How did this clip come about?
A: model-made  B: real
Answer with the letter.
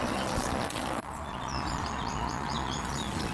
A